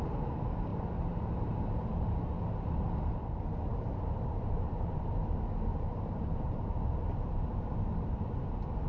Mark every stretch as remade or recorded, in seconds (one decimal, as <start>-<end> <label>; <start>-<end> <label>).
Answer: 0.0-3.7 recorded; 3.7-5.2 remade; 5.2-5.7 recorded; 5.7-8.9 remade